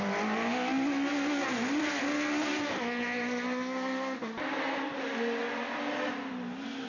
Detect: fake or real real